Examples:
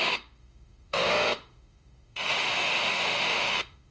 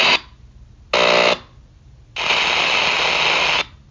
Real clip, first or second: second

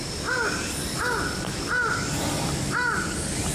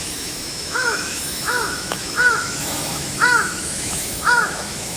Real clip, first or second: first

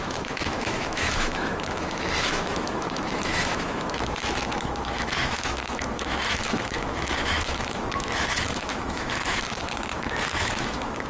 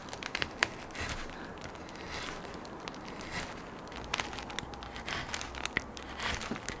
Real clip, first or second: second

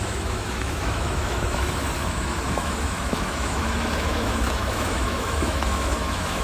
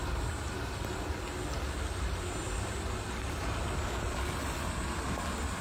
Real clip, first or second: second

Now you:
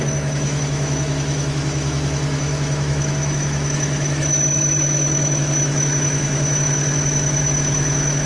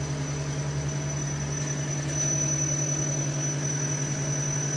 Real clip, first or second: second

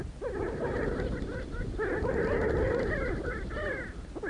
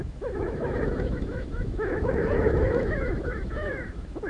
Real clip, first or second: first